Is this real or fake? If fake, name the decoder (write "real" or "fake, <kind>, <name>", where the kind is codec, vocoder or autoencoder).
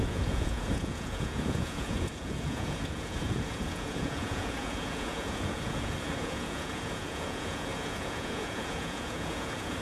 fake, vocoder, Vocos